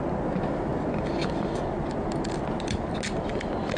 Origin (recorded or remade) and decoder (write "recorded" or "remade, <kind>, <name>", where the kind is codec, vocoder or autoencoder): recorded